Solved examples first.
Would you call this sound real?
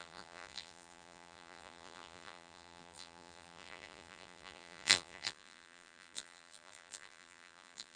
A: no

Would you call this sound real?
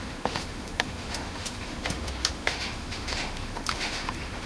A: no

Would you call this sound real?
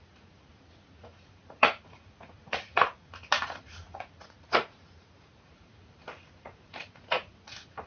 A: no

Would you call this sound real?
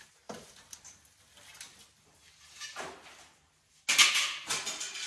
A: yes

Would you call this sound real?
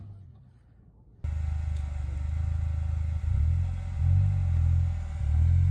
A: yes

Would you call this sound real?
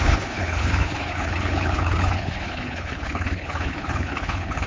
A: no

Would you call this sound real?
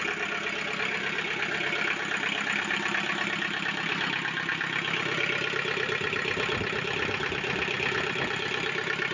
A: yes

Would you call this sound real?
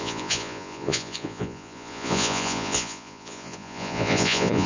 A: no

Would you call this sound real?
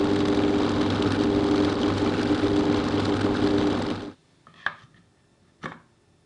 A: yes